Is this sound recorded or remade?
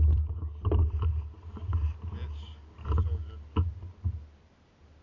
recorded